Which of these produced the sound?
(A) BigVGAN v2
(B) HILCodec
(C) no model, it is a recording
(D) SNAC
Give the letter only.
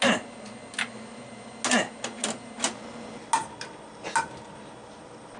C